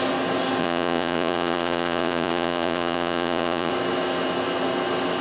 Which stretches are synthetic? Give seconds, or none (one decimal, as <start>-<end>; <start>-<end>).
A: 0.6-3.7